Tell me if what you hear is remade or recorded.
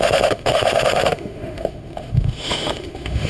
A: remade